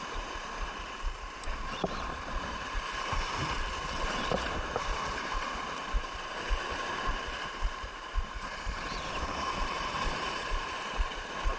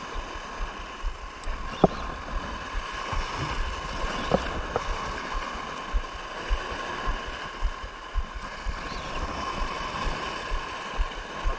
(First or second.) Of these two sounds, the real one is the second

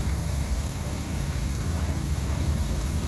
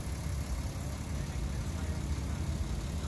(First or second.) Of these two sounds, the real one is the second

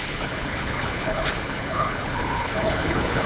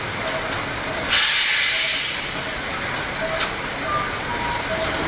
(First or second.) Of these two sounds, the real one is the second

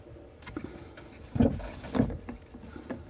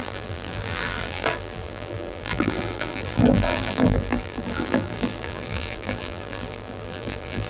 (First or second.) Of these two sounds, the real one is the first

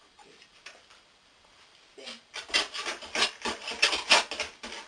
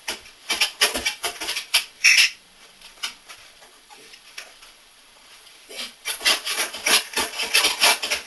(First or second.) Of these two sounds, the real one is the first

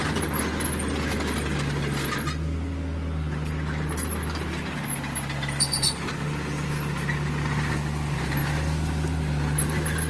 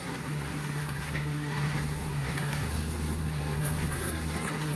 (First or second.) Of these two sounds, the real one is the first